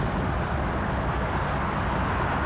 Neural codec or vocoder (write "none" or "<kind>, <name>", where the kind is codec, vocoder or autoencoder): none